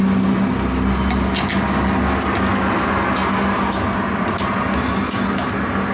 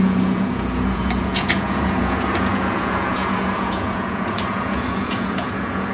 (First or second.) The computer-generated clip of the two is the second